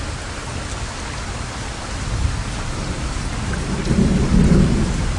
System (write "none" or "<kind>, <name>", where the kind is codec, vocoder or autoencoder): none